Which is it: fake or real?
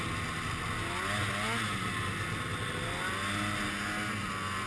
real